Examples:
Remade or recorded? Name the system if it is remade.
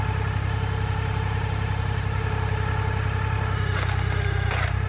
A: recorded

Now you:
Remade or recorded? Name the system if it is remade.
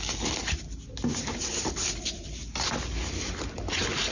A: recorded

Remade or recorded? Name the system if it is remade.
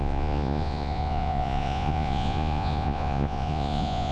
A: remade, vocoder, Vocos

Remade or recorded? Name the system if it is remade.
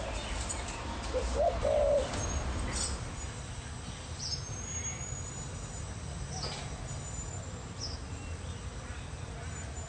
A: recorded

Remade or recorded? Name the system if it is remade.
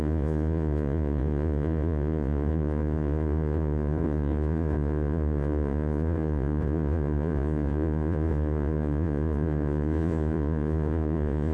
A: remade, vocoder, Vocos